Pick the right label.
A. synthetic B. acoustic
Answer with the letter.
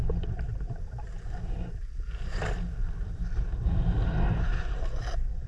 A